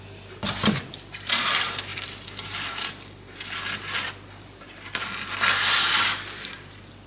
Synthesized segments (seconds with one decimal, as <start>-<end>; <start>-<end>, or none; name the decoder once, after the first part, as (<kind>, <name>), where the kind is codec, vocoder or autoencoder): none